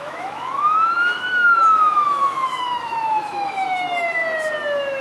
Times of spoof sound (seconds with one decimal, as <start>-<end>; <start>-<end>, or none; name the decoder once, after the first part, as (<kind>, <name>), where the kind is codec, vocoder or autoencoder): 0.0-4.2 (autoencoder, DAC-VAE)